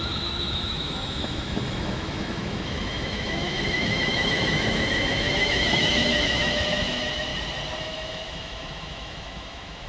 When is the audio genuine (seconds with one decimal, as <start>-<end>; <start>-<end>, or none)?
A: 7.3-7.8